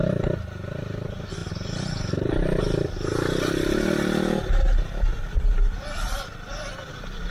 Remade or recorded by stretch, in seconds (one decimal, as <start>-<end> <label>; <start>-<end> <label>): 0.0-1.4 recorded; 1.4-2.6 remade; 2.6-5.1 recorded; 5.1-6.3 remade; 6.3-7.3 recorded

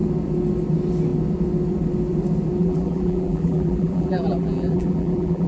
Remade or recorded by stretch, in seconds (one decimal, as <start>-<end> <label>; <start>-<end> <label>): 0.0-2.6 recorded; 2.6-5.5 remade